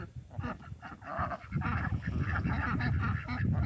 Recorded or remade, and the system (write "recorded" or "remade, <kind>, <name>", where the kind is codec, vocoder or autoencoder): recorded